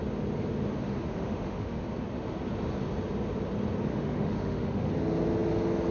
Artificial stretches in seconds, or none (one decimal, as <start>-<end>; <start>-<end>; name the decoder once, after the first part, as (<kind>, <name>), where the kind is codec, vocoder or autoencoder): 1.1-1.8 (autoencoder, DAC-VAE); 3.9-4.9